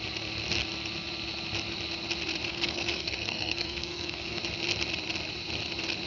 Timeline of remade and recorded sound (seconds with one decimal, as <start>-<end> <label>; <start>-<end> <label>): 0.0-2.5 recorded; 2.5-4.4 remade; 4.4-6.1 recorded